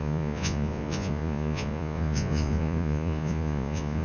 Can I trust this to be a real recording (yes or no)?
no